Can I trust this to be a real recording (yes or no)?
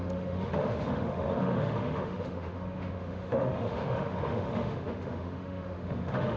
no